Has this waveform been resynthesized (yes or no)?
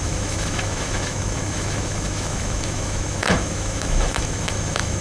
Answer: yes